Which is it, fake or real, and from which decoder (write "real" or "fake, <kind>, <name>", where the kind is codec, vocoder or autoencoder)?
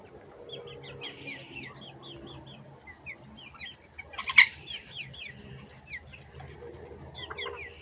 fake, vocoder, BigVGAN v2